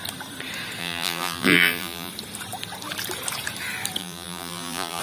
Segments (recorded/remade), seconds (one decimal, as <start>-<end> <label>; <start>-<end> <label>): 0.0-0.8 recorded; 0.8-2.1 remade; 2.1-4.0 recorded; 4.0-5.0 remade